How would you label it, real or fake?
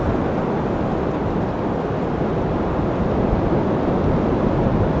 real